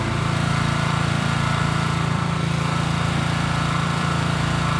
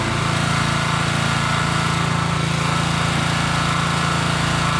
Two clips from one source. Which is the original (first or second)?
second